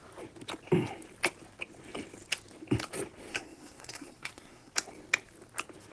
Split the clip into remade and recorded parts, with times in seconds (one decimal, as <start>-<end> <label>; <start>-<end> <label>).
0.0-3.3 recorded; 3.3-4.7 remade; 4.7-5.9 recorded